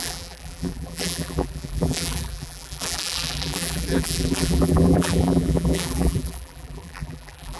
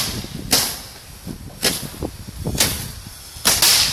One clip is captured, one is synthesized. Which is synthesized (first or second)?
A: first